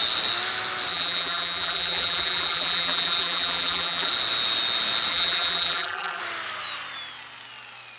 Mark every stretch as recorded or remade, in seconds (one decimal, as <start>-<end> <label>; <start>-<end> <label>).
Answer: 0.0-0.9 recorded; 0.9-4.1 remade; 4.1-5.1 recorded; 5.1-6.2 remade; 6.2-8.0 recorded